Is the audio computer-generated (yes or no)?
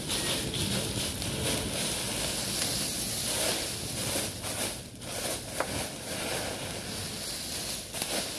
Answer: no